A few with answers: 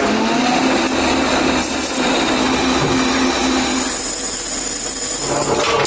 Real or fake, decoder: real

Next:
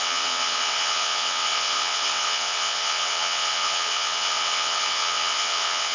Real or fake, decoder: fake, vocoder, WaveNeXt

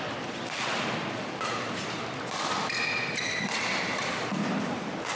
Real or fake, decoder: real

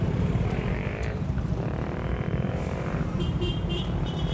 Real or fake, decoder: fake, vocoder, BigVGAN v2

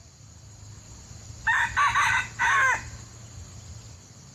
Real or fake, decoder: real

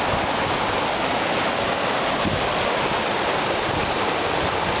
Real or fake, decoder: real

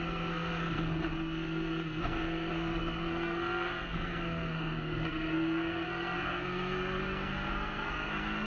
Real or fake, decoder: fake, codec, SNAC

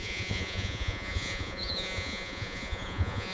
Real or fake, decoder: fake, vocoder, Vocos